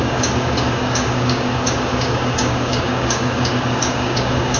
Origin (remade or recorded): remade